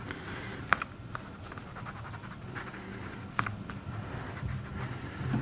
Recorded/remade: recorded